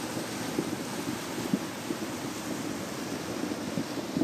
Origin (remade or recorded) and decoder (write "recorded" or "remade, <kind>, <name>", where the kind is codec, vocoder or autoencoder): recorded